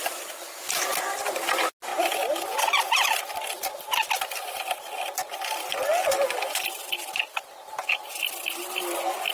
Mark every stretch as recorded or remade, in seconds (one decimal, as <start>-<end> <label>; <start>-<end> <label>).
0.0-9.3 recorded